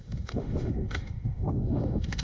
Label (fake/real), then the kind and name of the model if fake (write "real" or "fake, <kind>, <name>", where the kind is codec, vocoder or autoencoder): fake, autoencoder, DAC-VAE